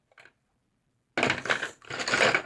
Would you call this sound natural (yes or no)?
yes